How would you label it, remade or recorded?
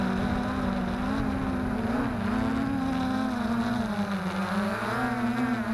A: recorded